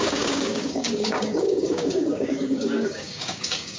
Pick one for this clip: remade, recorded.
remade